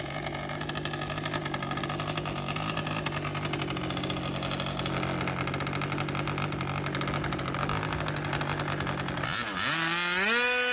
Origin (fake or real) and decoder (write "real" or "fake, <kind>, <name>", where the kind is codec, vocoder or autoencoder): real